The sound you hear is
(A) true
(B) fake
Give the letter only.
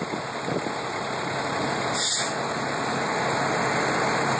A